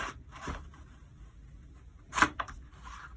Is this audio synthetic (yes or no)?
no